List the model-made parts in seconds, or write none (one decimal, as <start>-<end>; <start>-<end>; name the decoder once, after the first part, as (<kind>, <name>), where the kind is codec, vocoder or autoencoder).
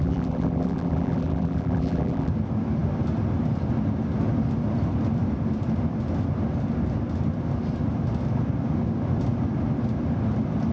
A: 0.0-2.3 (vocoder, BigVGAN v2)